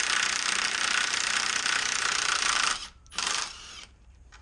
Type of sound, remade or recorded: remade